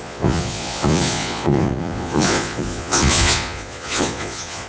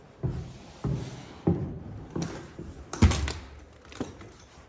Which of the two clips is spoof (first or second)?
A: first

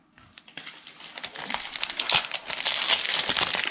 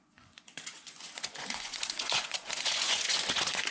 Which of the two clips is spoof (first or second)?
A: second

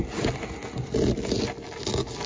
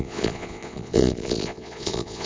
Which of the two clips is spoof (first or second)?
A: second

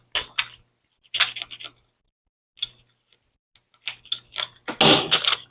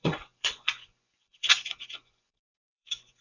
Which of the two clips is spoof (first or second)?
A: second